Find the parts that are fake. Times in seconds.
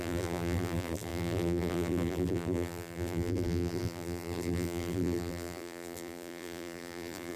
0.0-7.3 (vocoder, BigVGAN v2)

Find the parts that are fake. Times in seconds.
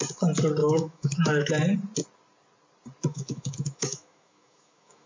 0.6-1.5 (autoencoder, DAC-VAE); 3.1-5.1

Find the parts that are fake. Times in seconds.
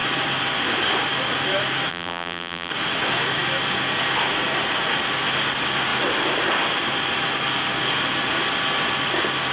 1.9-2.7 (vocoder, BigVGAN v2)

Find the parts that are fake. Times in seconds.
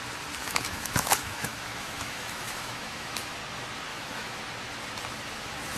0.4-3.3 (autoencoder, DAC-VAE); 3.9-4.4